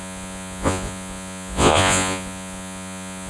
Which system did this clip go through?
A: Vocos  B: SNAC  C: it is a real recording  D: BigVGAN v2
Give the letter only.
A